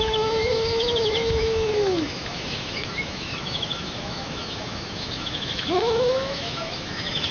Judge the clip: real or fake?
fake